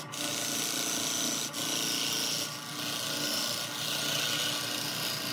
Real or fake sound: real